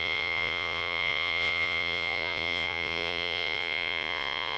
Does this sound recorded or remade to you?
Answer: remade